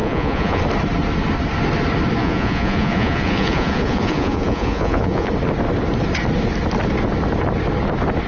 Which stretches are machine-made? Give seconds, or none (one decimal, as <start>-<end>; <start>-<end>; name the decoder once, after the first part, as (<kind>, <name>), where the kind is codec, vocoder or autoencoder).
0.0-0.6 (vocoder, Vocos); 2.2-5.3